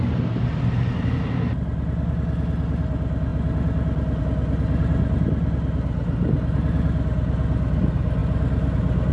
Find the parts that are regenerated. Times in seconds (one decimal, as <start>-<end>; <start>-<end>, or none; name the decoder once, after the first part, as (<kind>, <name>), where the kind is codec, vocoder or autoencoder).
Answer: none